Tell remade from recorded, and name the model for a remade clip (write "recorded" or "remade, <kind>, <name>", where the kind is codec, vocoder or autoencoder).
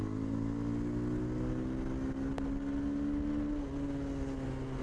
recorded